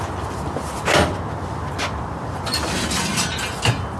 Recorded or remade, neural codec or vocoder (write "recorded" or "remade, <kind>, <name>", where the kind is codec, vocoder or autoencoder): recorded